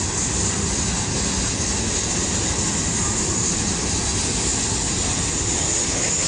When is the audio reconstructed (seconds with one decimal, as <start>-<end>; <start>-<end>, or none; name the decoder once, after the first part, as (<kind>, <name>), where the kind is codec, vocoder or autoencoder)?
none